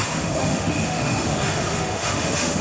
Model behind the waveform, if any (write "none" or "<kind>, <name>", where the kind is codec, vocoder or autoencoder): autoencoder, DAC-VAE